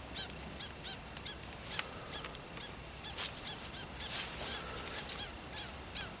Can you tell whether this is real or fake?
real